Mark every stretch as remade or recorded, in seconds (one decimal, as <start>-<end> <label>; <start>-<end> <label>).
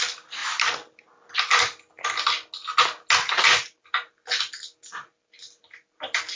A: 0.0-6.4 recorded